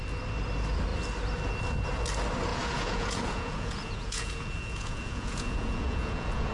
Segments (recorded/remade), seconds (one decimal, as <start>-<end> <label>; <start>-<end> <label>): 0.0-2.5 recorded; 2.5-6.5 remade